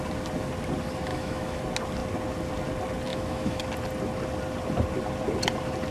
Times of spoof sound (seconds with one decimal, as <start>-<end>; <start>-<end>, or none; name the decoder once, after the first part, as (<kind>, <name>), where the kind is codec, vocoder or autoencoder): 1.1-1.6 (autoencoder, DAC-VAE); 3.1-3.6